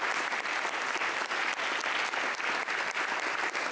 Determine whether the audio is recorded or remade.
recorded